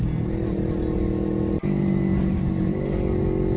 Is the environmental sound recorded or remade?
recorded